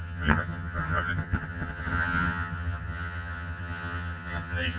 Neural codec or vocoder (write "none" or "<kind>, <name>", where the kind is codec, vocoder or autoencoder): vocoder, HiFi-GAN